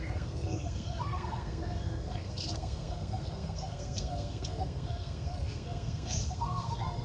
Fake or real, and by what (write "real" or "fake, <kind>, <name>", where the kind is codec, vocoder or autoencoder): fake, codec, SNAC